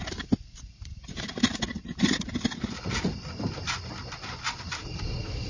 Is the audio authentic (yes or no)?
yes